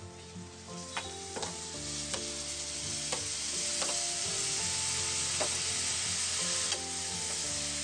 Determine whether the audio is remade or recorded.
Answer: recorded